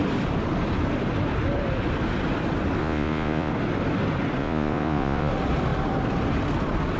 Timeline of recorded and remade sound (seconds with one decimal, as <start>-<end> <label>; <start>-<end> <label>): 0.0-2.8 recorded; 2.8-3.5 remade; 3.5-4.4 recorded; 4.4-5.3 remade; 5.3-7.0 recorded